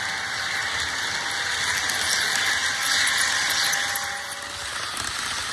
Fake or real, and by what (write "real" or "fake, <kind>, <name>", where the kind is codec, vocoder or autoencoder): real